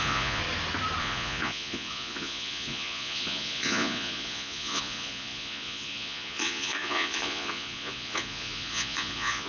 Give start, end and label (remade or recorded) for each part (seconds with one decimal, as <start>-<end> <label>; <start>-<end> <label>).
0.0-0.4 remade; 0.4-1.0 recorded; 1.0-9.5 remade